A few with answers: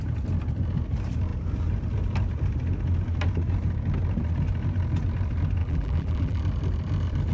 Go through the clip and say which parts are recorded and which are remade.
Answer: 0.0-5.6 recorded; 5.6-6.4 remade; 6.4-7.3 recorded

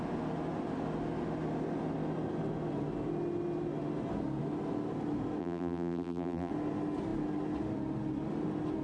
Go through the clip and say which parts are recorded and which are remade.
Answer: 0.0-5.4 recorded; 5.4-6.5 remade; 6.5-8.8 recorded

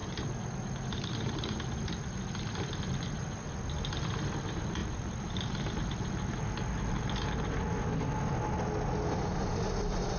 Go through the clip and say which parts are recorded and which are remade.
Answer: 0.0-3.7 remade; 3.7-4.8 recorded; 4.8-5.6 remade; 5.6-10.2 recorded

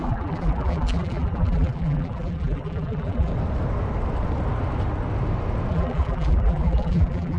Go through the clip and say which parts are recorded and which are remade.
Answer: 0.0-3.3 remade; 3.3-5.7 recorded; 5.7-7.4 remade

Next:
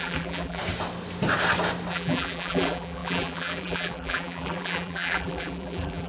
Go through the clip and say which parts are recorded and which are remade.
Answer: 0.0-0.6 remade; 0.6-1.9 recorded; 1.9-6.1 remade